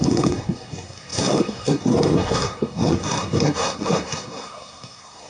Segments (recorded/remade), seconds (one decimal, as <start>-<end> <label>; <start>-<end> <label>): 0.0-5.3 remade